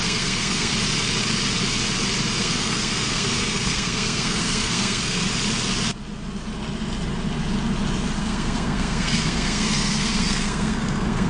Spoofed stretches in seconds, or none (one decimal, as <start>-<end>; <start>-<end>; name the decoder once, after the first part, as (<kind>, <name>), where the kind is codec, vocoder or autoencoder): 0.0-0.7 (codec, SNAC); 2.4-5.2; 8.2-11.3